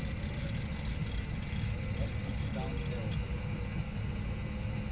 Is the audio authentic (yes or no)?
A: yes